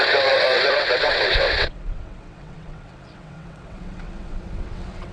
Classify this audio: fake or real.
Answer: fake